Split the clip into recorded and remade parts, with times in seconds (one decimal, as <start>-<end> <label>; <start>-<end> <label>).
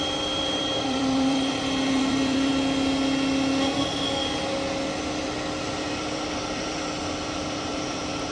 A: 0.0-2.5 remade; 2.5-5.7 recorded; 5.7-8.3 remade